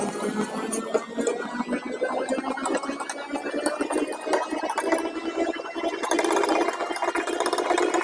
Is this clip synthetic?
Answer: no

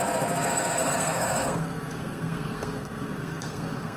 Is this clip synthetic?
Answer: yes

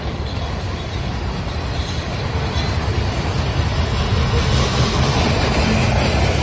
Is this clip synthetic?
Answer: no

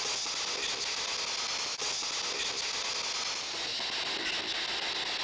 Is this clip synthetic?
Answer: no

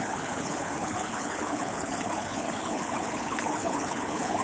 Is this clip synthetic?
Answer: yes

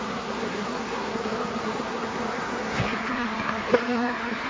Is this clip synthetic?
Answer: yes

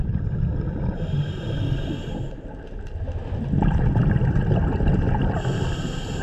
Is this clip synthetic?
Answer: no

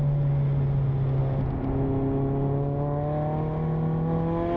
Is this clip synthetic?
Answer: no